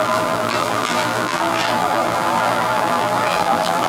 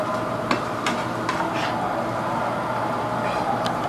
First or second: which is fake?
first